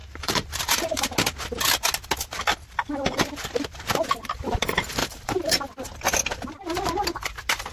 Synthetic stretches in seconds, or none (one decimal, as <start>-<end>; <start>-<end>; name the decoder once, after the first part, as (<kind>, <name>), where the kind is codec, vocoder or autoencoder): 0.0-1.0 (vocoder, BigVGAN v2); 5.0-5.8